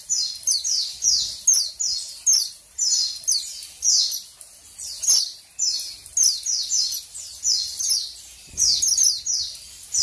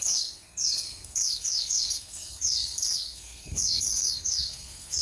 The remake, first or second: second